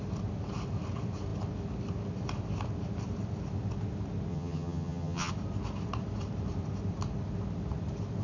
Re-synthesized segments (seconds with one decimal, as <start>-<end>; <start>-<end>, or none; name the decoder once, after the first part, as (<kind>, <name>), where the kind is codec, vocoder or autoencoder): 4.3-5.3 (vocoder, HiFi-GAN)